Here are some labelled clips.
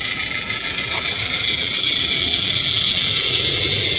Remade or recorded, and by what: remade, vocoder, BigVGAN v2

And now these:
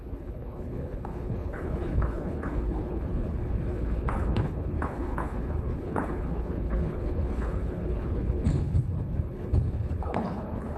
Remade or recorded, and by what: remade, codec, HILCodec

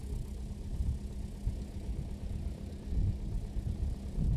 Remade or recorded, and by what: recorded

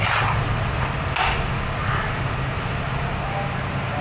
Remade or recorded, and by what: recorded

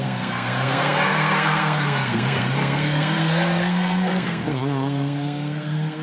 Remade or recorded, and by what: remade, codec, SNAC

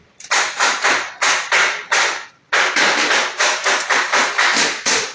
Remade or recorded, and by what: recorded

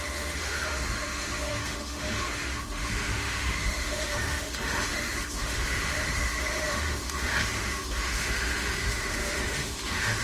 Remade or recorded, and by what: remade, autoencoder, DAC-VAE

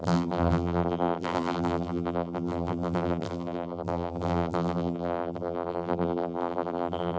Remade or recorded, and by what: remade, vocoder, BigVGAN v2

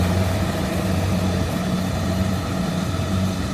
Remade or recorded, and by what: remade, vocoder, BigVGAN v2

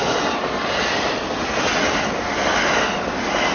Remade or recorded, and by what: remade, vocoder, BigVGAN v2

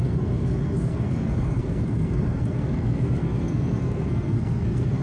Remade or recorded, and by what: remade, codec, SNAC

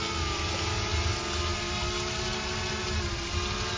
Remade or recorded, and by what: recorded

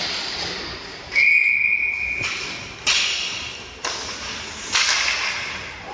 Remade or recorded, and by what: recorded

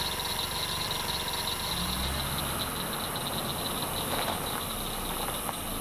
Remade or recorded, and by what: recorded